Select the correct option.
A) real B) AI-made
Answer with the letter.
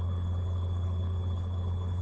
B